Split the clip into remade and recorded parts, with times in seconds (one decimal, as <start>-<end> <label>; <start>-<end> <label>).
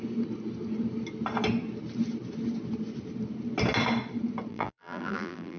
0.0-4.5 recorded; 4.5-5.6 remade